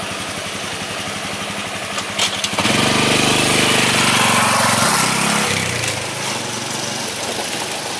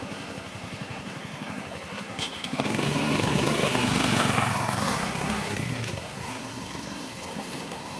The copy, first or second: second